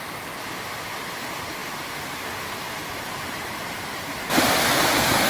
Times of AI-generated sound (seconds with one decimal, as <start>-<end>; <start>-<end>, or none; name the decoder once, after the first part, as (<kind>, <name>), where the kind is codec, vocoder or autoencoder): none